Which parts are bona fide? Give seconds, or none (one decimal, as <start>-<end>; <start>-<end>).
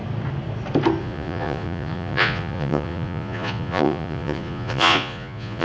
0.0-1.0